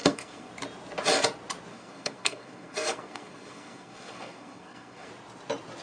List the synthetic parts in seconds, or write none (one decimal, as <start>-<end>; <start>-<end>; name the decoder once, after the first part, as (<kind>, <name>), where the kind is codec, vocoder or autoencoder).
0.0-0.5 (codec, SNAC); 1.7-5.1